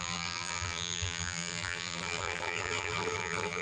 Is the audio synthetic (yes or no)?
yes